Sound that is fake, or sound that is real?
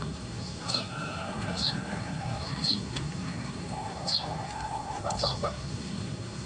fake